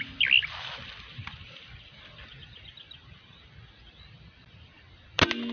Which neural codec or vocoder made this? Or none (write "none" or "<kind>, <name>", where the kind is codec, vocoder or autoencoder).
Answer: none